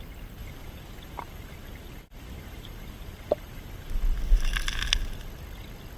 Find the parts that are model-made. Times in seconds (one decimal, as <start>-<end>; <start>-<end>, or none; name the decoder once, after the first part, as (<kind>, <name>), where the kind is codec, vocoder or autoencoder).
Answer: 0.4-4.0 (vocoder, BigVGAN v2)